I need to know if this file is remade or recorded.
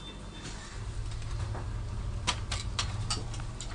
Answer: recorded